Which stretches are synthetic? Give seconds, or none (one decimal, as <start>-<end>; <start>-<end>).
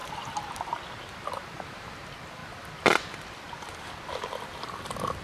0.0-1.6